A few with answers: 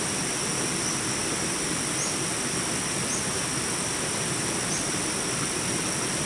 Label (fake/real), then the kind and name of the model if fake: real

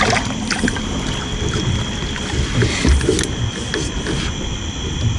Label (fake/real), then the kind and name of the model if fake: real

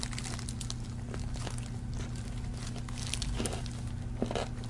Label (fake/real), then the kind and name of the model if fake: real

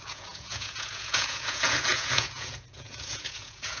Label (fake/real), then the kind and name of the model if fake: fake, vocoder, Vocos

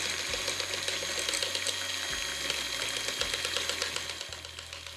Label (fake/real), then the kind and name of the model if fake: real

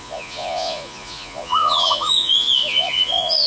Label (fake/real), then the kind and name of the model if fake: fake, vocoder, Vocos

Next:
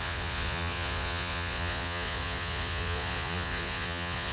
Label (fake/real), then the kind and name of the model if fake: fake, vocoder, Vocos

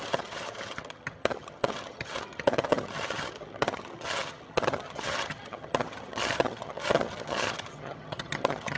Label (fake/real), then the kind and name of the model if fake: fake, vocoder, HiFi-GAN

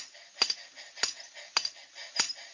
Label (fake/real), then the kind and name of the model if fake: real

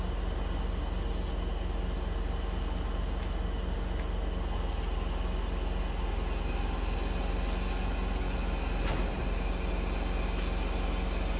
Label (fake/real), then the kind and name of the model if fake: real